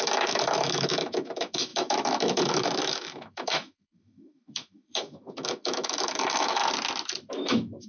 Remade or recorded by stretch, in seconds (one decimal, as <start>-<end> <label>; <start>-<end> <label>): 0.0-6.6 remade; 6.6-7.3 recorded; 7.3-7.9 remade